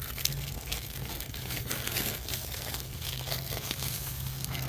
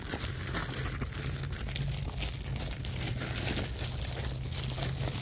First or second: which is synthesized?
first